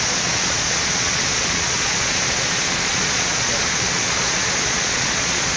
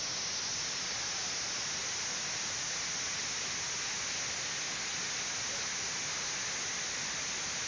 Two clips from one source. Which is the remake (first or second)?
first